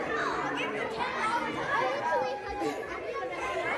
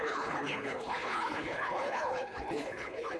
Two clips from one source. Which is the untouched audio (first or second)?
first